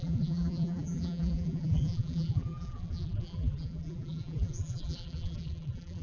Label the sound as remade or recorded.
remade